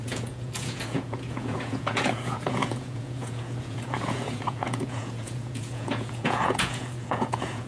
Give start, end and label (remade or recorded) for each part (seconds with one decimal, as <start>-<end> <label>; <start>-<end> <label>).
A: 0.0-7.7 remade